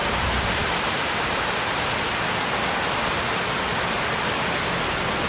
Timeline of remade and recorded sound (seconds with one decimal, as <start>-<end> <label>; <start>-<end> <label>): 0.0-5.3 recorded